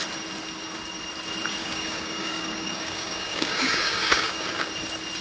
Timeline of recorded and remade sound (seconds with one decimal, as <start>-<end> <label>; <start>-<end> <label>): 0.0-1.6 recorded; 1.6-4.7 remade; 4.7-5.2 recorded